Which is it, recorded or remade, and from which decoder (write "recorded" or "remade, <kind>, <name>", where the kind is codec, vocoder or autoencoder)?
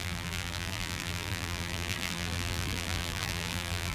remade, vocoder, BigVGAN v2